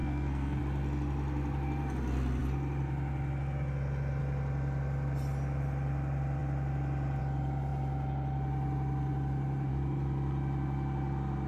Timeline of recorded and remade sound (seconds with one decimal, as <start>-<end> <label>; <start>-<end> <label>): 0.0-0.6 remade; 0.6-11.5 recorded